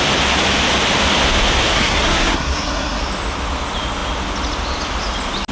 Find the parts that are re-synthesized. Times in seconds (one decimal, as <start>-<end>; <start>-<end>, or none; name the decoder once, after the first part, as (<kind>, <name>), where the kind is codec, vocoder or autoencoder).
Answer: 1.7-3.0 (codec, SNAC)